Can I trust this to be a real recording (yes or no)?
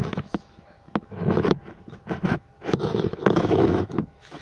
no